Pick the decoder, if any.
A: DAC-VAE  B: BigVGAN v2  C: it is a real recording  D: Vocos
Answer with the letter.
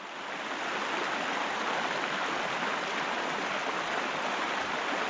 C